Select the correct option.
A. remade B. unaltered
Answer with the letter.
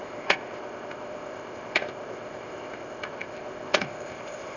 A